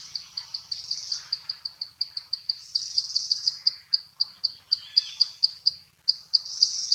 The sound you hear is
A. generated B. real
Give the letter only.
B